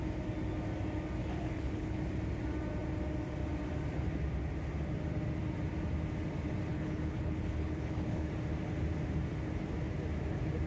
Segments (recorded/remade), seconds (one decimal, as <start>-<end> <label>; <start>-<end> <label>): 0.0-1.2 recorded; 1.2-2.0 remade; 2.0-6.7 recorded; 6.7-8.3 remade; 8.3-10.7 recorded